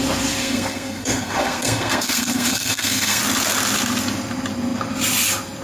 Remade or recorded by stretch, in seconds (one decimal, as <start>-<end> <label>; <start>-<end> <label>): 0.0-0.4 recorded; 0.4-3.2 remade; 3.2-5.6 recorded